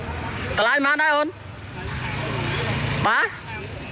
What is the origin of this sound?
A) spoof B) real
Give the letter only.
B